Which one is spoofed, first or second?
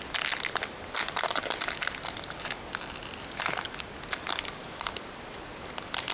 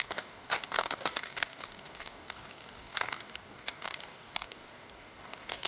second